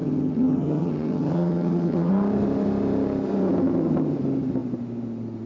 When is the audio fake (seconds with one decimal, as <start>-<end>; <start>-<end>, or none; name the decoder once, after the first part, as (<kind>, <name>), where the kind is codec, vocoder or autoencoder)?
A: 0.0-2.1 (vocoder, HiFi-GAN)